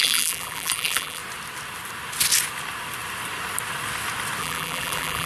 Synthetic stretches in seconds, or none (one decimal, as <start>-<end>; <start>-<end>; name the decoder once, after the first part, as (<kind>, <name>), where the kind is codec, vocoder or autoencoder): 0.0-1.2 (vocoder, BigVGAN v2); 4.4-5.3